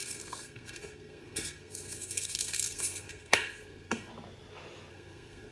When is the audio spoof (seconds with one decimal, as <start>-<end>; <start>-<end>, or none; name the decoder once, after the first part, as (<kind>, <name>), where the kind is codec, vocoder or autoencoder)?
0.0-4.1 (codec, SNAC); 4.9-5.5